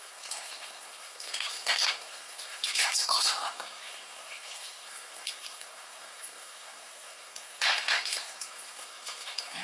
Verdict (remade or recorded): remade